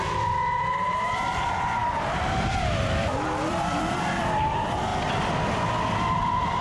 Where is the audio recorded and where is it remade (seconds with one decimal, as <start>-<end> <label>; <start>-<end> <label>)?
0.0-1.8 recorded; 1.8-4.2 remade; 4.2-6.6 recorded